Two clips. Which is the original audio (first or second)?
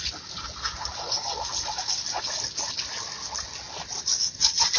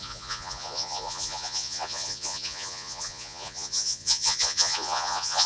first